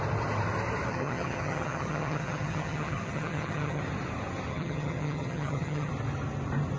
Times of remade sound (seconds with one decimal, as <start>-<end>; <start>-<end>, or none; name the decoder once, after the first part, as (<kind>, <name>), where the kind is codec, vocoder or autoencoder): 0.9-3.8 (vocoder, HiFi-GAN); 4.5-5.9